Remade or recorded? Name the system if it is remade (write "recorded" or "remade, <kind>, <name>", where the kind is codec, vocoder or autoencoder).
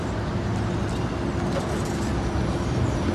recorded